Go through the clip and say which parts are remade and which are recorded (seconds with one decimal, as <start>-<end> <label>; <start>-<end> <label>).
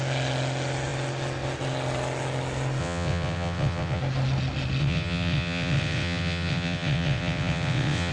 0.0-2.8 recorded; 2.8-4.0 remade; 4.0-4.8 recorded; 4.8-8.1 remade